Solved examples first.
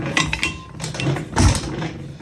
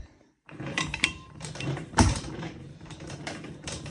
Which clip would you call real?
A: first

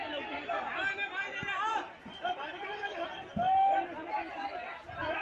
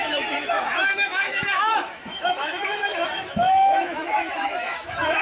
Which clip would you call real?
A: first